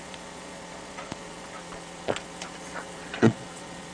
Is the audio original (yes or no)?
no